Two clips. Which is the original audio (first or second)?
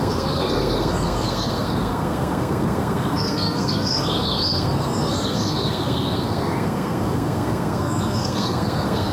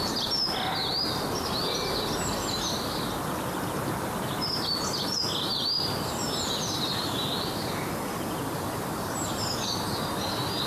second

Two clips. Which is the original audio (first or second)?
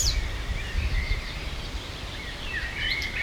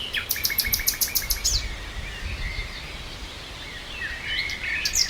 second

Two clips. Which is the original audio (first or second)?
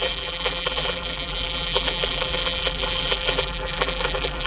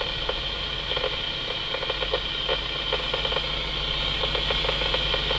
second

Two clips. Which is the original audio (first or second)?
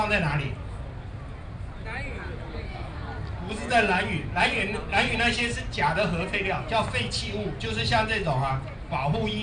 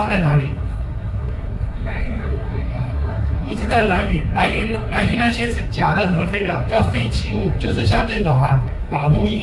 first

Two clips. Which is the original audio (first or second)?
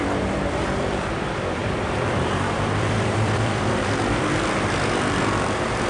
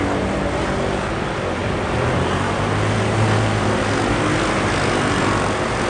second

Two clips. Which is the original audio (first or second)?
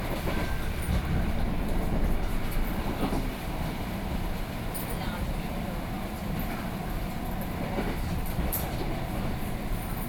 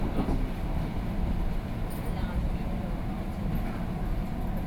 second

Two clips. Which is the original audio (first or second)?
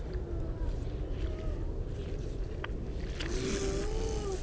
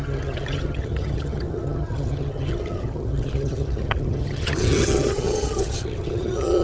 first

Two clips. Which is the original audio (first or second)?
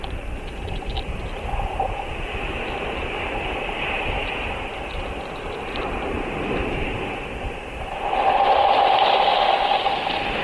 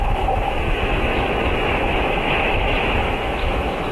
first